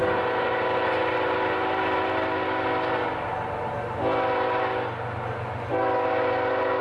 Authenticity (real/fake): real